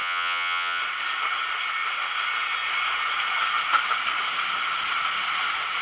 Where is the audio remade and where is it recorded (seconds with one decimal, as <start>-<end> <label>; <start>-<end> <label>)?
0.0-0.8 remade; 0.8-5.8 recorded